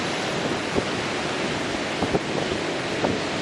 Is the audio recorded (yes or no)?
yes